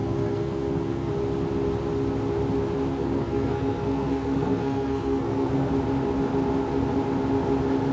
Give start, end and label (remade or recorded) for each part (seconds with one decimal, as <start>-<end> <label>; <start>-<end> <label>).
0.0-1.1 remade; 1.1-2.9 recorded; 2.9-5.7 remade; 5.7-7.9 recorded